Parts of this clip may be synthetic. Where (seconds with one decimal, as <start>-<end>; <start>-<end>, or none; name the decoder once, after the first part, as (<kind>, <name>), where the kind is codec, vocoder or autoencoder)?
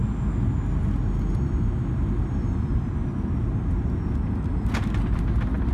none